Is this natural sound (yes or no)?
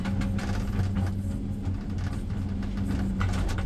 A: yes